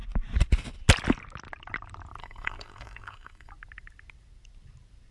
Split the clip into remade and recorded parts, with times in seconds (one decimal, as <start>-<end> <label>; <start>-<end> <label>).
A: 0.0-2.2 recorded; 2.2-3.5 remade; 3.5-5.1 recorded